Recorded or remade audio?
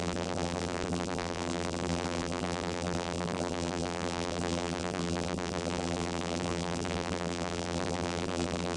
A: remade